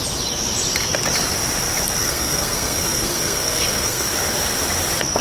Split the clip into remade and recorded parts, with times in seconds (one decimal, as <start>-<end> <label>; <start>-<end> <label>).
0.0-2.0 recorded; 2.0-4.1 remade; 4.1-5.2 recorded